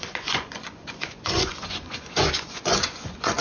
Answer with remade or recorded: remade